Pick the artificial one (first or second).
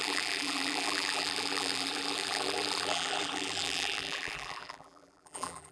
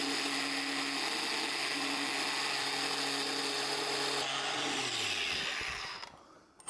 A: first